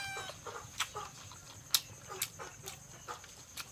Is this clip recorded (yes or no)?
yes